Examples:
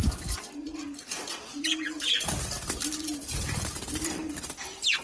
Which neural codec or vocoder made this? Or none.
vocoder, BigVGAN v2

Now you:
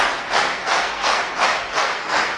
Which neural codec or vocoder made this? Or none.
codec, SNAC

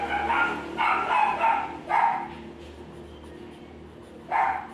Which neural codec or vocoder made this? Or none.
none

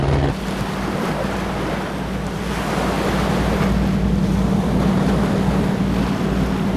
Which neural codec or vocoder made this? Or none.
none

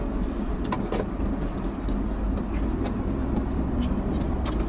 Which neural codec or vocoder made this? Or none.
none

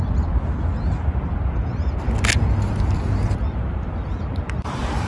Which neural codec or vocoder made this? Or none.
none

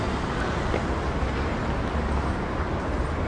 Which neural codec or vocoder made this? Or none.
none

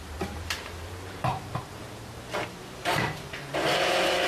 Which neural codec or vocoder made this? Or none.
vocoder, BigVGAN v2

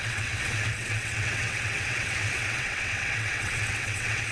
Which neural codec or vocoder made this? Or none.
vocoder, WaveNeXt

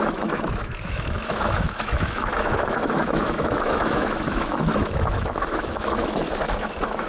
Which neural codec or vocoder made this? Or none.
autoencoder, DAC-VAE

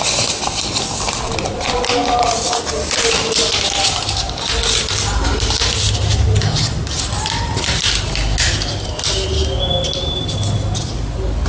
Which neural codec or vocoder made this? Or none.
none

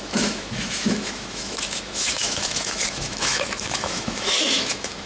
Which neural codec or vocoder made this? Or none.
autoencoder, DAC-VAE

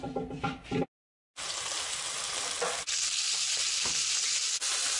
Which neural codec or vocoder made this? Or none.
none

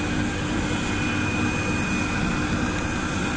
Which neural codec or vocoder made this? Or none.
none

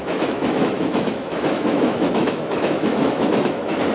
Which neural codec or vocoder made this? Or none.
autoencoder, DAC-VAE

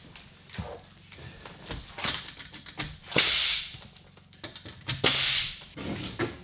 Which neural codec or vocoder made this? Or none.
none